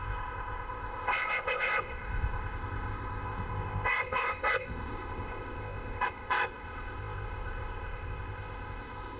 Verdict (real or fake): fake